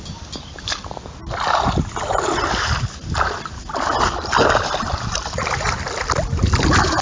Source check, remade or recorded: recorded